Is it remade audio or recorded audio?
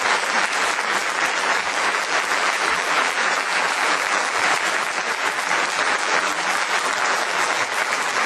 remade